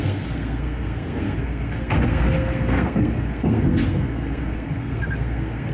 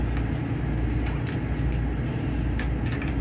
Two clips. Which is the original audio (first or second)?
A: second